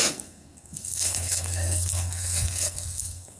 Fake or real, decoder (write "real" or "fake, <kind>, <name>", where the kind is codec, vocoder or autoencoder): fake, codec, SNAC